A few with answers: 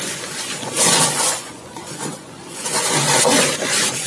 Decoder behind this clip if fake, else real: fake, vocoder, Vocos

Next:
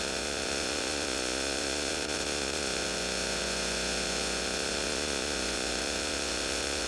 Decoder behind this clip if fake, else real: fake, vocoder, Vocos